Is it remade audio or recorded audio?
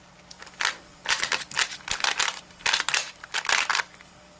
remade